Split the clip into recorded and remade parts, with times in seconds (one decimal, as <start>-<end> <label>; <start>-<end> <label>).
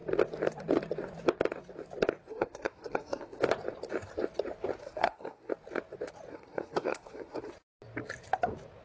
0.0-2.3 recorded; 2.3-3.4 remade; 3.4-4.8 recorded; 4.8-5.5 remade; 5.5-6.3 recorded; 6.3-7.5 remade; 7.5-8.8 recorded